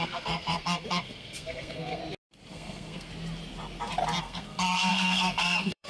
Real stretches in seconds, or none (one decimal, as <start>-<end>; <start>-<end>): 2.0-2.5; 3.1-4.2